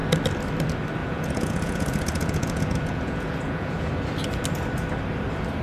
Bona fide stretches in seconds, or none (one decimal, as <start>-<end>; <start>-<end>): 0.0-1.0; 3.9-5.6